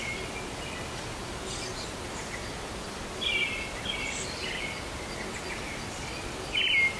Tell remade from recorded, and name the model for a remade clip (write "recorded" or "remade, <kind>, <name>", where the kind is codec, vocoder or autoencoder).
recorded